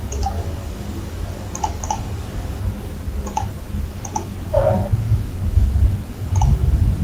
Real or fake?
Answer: fake